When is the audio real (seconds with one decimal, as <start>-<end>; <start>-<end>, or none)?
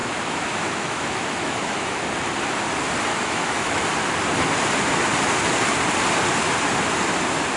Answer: 2.0-3.1; 3.8-7.6